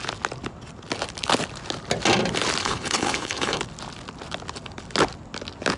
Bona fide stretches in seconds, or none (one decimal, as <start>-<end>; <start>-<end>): 0.0-2.6; 3.6-5.8